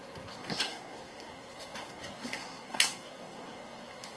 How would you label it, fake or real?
fake